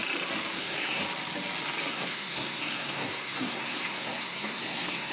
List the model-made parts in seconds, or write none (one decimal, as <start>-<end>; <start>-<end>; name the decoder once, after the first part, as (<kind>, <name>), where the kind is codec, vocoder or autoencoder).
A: 0.6-1.0 (codec, SNAC); 1.9-5.1